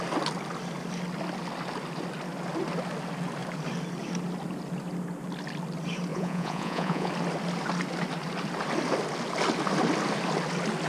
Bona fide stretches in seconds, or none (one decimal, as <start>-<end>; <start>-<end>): 0.0-6.1; 7.1-10.9